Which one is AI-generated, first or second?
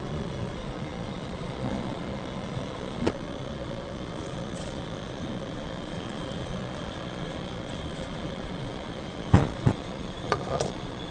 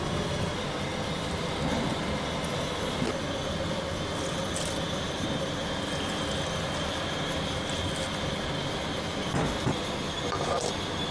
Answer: first